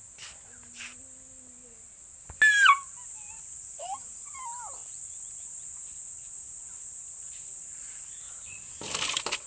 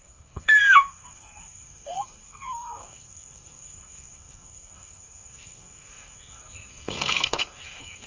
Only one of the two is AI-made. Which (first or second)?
second